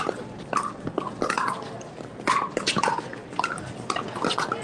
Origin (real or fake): real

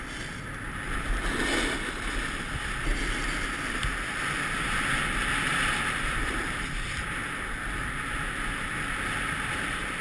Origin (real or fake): real